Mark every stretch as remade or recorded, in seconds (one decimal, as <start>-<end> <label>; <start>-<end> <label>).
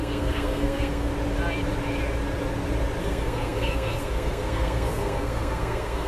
0.0-1.1 remade; 1.1-3.0 recorded; 3.0-6.1 remade